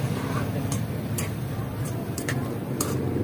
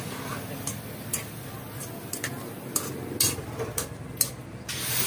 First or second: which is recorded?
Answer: second